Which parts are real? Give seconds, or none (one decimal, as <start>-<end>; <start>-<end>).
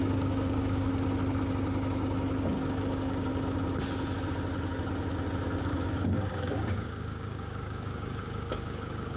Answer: 0.9-2.5; 3.3-5.6